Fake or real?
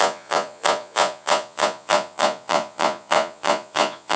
fake